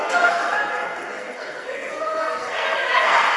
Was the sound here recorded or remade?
remade